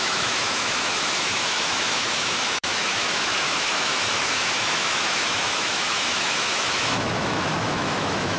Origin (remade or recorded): remade